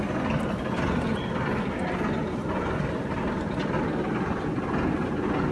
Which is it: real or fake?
real